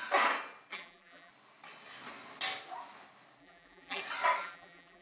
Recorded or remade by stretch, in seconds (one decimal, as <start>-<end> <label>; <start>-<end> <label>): 0.0-0.7 recorded; 0.7-1.3 remade; 1.3-3.4 recorded; 3.4-4.0 remade; 4.0-4.4 recorded; 4.4-5.0 remade